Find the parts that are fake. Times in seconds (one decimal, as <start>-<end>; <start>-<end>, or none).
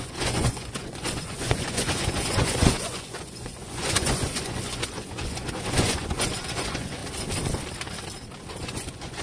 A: 0.0-7.0; 8.5-9.2